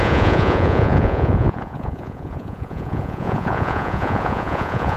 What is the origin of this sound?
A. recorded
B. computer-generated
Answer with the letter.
B